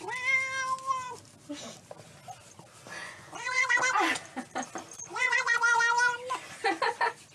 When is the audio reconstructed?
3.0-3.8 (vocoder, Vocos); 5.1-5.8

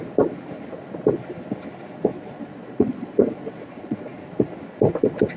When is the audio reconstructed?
2.1-4.2 (vocoder, Vocos)